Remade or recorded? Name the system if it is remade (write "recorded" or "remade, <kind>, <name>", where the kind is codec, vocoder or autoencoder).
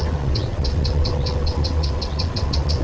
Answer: remade, vocoder, WaveNeXt